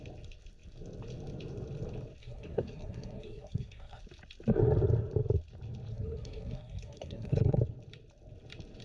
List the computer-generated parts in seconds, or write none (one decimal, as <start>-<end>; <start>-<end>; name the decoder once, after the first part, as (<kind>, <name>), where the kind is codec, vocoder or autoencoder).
2.2-4.0 (codec, SNAC); 5.9-7.6